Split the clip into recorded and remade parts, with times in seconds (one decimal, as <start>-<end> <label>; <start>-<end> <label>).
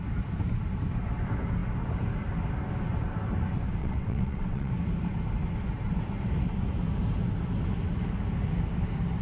0.0-3.8 recorded; 3.8-4.7 remade; 4.7-9.2 recorded